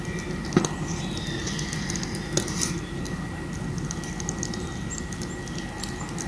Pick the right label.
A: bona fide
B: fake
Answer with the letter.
A